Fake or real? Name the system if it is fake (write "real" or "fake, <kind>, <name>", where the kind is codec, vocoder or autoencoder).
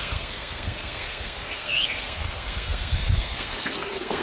fake, codec, SNAC